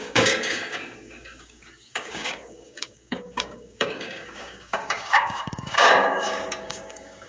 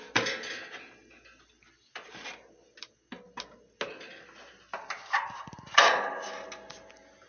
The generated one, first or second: first